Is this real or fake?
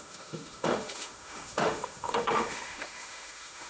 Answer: fake